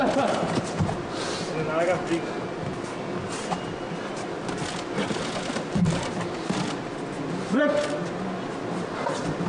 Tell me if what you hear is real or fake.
real